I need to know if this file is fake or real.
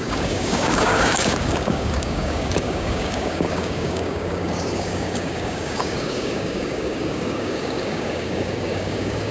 fake